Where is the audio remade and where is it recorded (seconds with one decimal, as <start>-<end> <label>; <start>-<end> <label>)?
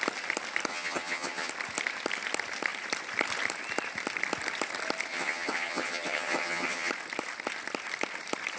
0.0-0.7 recorded; 0.7-1.5 remade; 1.5-5.1 recorded; 5.1-6.9 remade; 6.9-8.6 recorded